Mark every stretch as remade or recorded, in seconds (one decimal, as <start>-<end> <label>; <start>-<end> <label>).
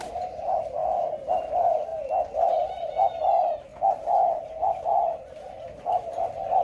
0.0-0.8 remade; 0.8-1.5 recorded; 1.5-1.9 remade; 1.9-2.5 recorded; 2.5-3.7 remade; 3.7-4.4 recorded; 4.4-6.6 remade